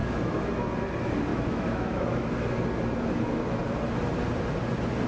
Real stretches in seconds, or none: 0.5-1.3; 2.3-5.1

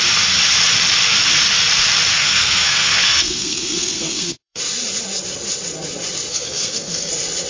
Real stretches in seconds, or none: 0.0-2.1; 4.6-6.3; 7.1-7.5

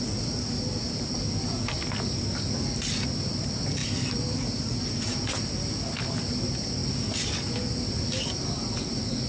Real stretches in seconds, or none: 0.0-3.8; 4.8-9.3

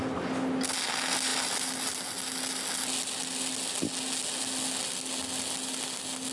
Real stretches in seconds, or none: 0.0-6.3

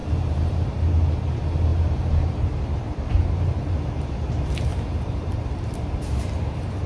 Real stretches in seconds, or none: 0.8-1.7; 3.1-4.7; 6.0-6.9

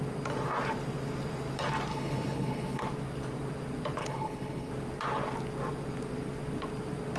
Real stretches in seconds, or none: 0.0-1.9; 2.8-4.0; 4.7-7.2